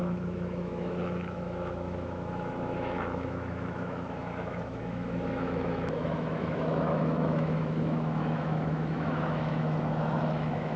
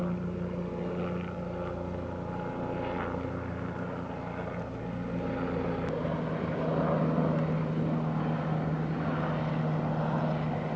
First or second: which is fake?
first